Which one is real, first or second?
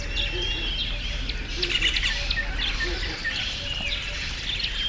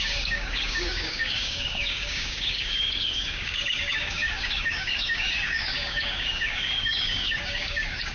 first